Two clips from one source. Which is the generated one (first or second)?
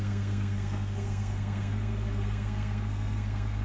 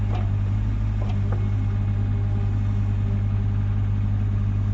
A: first